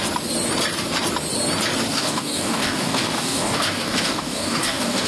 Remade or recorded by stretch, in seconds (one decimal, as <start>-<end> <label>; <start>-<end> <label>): 0.0-1.9 recorded; 1.9-5.1 remade